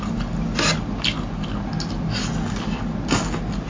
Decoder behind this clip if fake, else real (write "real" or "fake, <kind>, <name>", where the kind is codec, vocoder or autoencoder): real